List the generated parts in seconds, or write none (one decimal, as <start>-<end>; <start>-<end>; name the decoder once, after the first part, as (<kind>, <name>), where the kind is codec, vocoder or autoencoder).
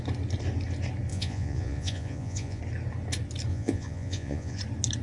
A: 1.1-2.6 (vocoder, Vocos); 3.5-4.6